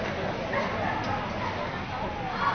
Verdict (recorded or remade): recorded